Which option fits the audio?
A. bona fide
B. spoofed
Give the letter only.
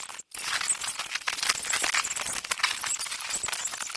A